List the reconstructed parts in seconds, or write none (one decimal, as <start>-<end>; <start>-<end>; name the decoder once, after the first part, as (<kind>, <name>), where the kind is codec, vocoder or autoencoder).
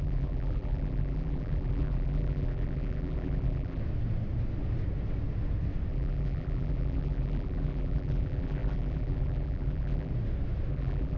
0.0-3.8 (vocoder, BigVGAN v2); 5.9-10.1; 10.7-11.2